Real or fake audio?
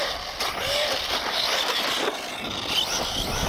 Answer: real